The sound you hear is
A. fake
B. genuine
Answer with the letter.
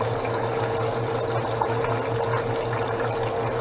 B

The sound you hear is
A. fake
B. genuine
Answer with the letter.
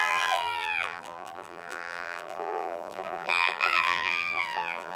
A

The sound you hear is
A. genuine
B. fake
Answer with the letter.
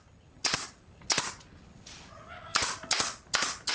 A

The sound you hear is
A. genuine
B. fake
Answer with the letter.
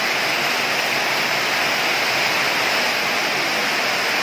A